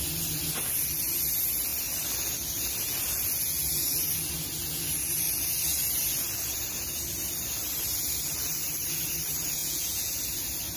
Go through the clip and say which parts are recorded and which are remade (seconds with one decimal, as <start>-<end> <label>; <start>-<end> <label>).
0.0-9.6 recorded; 9.6-10.2 remade; 10.2-10.8 recorded